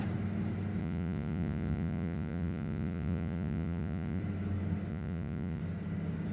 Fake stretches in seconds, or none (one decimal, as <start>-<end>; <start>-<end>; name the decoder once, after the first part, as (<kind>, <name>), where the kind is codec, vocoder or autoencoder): 0.8-4.2 (vocoder, Vocos); 4.9-5.6